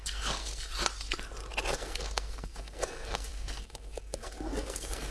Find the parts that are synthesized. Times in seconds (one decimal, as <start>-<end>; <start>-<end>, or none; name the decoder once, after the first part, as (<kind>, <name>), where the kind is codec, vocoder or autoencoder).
0.0-0.7 (codec, SNAC); 1.7-5.1